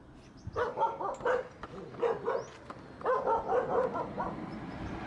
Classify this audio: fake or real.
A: real